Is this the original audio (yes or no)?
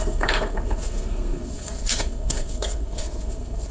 no